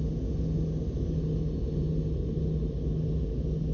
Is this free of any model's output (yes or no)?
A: yes